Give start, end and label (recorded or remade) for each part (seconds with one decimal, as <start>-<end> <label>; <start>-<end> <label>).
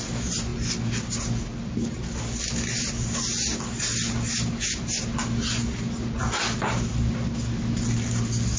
0.0-8.6 recorded